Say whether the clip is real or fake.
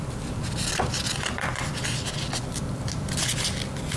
real